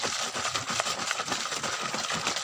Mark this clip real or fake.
real